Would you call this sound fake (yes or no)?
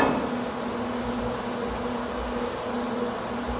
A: no